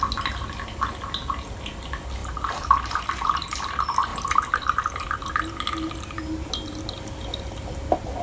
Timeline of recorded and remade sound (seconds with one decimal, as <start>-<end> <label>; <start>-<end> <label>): 0.0-2.2 recorded; 2.2-3.0 remade; 3.0-4.1 recorded; 4.1-5.3 remade; 5.3-8.2 recorded